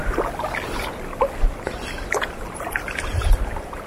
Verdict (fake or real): real